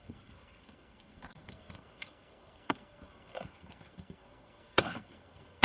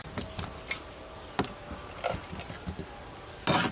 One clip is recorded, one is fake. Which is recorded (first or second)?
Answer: second